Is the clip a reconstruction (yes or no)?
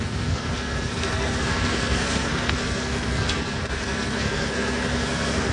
yes